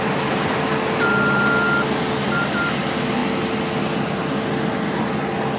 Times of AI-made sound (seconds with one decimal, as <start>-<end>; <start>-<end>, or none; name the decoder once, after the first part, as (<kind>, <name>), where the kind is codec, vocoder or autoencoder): none